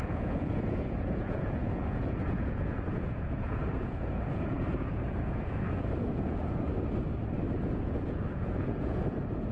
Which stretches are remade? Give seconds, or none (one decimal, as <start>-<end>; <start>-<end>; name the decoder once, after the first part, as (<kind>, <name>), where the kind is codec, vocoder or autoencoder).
0.0-6.7 (vocoder, Vocos); 7.7-9.5